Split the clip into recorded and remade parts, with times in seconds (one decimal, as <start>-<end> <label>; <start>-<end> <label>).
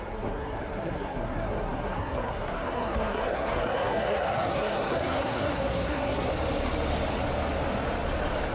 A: 0.0-6.3 remade; 6.3-8.5 recorded